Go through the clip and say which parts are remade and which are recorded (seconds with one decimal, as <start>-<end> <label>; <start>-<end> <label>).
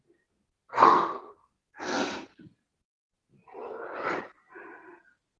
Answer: 0.0-0.7 recorded; 0.7-2.4 remade; 2.4-5.4 recorded